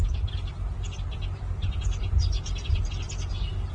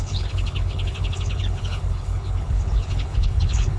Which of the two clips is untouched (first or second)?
first